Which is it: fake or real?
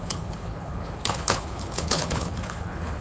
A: fake